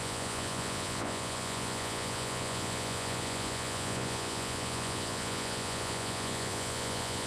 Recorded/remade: remade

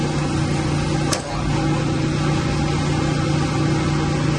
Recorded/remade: recorded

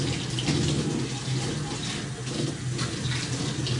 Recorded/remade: recorded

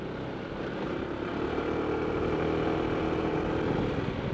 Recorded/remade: recorded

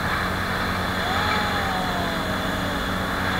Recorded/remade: recorded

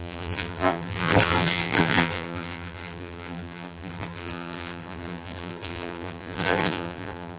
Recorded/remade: remade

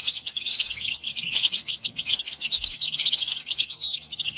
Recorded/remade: remade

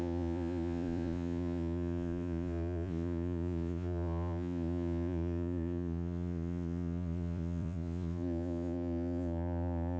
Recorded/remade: remade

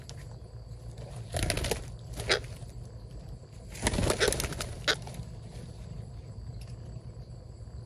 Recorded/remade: recorded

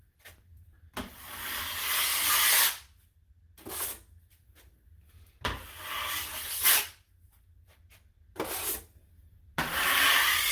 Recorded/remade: recorded